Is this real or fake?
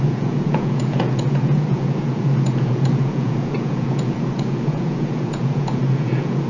fake